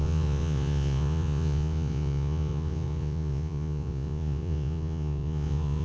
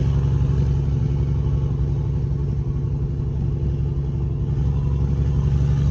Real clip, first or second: second